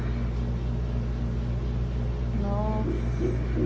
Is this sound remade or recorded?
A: recorded